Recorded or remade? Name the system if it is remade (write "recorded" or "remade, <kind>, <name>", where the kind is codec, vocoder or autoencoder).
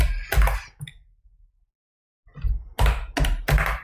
recorded